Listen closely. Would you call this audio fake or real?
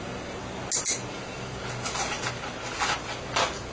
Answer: real